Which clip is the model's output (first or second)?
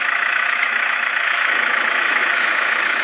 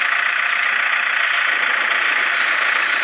first